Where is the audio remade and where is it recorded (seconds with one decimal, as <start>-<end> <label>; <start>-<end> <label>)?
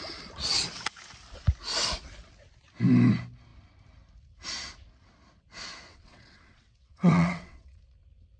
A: 0.0-5.9 recorded; 5.9-7.8 remade; 7.8-8.4 recorded